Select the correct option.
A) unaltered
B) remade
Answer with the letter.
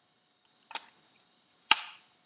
B